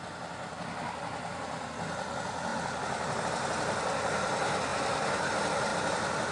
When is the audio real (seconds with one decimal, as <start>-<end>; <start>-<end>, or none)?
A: 0.0-2.5; 3.2-4.7; 5.3-6.3